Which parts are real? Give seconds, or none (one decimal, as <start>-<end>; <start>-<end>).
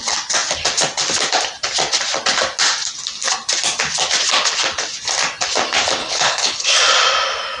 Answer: 0.0-6.0; 6.8-7.6